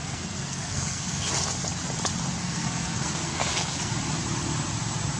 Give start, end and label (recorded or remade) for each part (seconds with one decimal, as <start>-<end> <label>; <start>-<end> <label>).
0.0-1.3 remade; 1.3-2.4 recorded; 2.4-3.9 remade; 3.9-5.2 recorded